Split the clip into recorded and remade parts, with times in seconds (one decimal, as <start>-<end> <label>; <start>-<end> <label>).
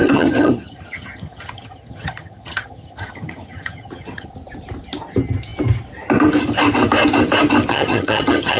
0.0-4.3 remade; 4.3-7.7 recorded; 7.7-8.6 remade